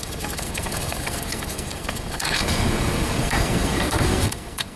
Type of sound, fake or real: fake